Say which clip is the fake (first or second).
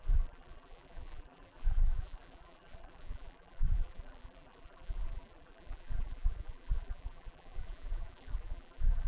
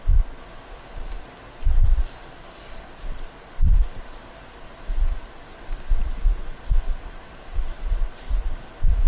first